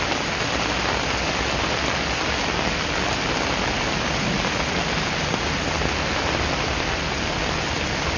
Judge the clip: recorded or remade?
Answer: recorded